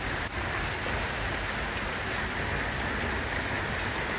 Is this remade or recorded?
recorded